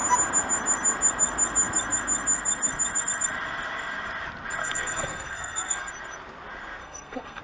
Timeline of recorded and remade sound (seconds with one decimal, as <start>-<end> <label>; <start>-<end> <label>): 0.0-4.6 recorded; 4.6-5.9 remade; 5.9-6.8 recorded; 6.8-7.4 remade